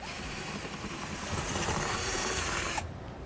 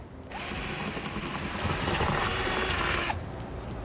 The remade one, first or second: first